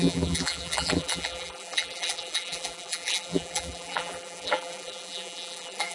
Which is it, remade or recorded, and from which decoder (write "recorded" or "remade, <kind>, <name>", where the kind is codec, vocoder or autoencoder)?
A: remade, vocoder, BigVGAN v2